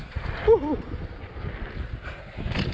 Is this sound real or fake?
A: real